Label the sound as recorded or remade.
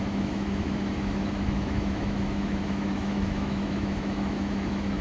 remade